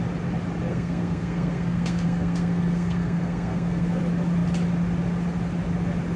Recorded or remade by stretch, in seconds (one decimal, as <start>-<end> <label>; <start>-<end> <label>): 0.0-0.7 recorded; 0.7-4.0 remade; 4.0-6.2 recorded